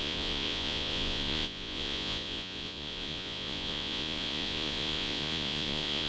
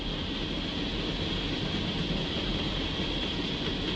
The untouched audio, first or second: second